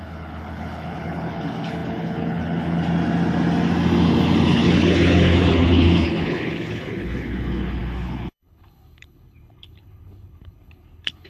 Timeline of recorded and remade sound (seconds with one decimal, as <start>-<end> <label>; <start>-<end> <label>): 0.0-2.8 remade; 2.8-4.4 recorded; 4.4-11.3 remade